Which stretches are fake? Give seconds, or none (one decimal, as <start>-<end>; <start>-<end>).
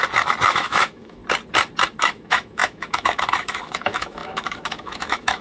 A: 0.5-1.2; 2.0-5.4